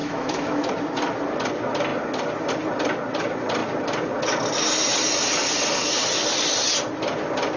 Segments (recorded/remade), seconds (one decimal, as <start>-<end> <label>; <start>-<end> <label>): 0.0-0.7 remade; 0.7-7.6 recorded

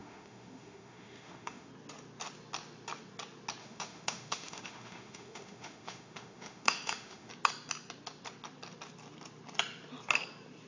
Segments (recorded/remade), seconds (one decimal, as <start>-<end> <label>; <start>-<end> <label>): 0.0-1.7 remade; 1.7-3.6 recorded; 3.6-7.3 remade; 7.3-10.7 recorded

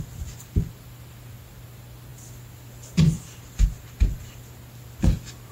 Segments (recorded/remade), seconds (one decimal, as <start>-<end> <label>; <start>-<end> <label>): 0.0-5.5 recorded

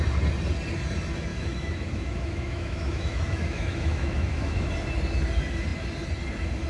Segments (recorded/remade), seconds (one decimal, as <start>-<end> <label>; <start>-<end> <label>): 0.0-1.3 recorded; 1.3-4.7 remade; 4.7-6.7 recorded

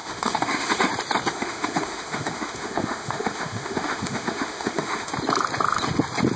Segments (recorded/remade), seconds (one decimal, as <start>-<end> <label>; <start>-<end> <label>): 0.0-0.9 remade; 0.9-1.3 recorded; 1.3-5.1 remade; 5.1-6.4 recorded

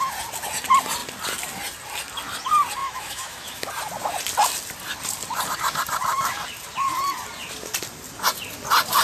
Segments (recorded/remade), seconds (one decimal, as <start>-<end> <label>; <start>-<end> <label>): 0.0-2.8 recorded; 2.8-3.7 remade; 3.7-9.0 recorded

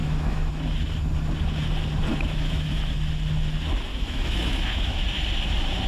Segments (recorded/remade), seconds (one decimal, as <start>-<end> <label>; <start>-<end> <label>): 0.0-0.5 remade; 0.5-2.1 recorded; 2.1-2.7 remade; 2.7-3.9 recorded; 3.9-5.0 remade; 5.0-5.9 recorded